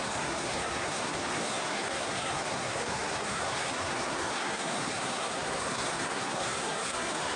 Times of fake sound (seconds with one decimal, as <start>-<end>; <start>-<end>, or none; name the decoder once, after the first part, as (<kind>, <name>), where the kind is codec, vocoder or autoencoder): 0.0-7.4 (codec, SNAC)